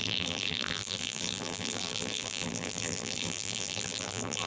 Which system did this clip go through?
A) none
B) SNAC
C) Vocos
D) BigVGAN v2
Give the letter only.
D